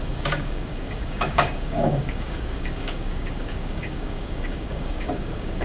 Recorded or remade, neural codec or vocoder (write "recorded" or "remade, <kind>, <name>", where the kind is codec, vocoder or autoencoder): remade, codec, DAC